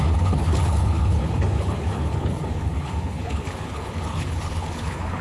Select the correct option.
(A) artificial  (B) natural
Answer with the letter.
A